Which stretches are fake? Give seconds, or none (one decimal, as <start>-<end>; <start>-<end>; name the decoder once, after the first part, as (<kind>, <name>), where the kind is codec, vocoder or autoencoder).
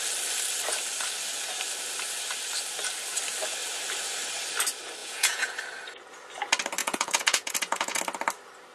5.0-5.5 (vocoder, Vocos); 6.8-8.0